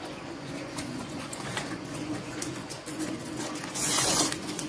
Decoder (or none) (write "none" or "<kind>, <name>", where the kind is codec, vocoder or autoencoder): vocoder, Vocos